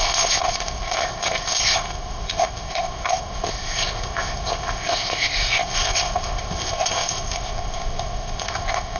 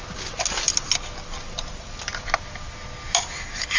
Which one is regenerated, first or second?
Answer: first